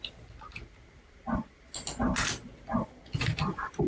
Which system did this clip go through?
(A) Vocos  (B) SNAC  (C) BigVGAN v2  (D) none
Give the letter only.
D